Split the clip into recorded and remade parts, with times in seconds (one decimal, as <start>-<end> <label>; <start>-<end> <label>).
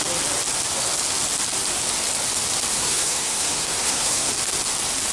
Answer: 0.0-2.7 recorded; 2.7-4.3 remade; 4.3-5.1 recorded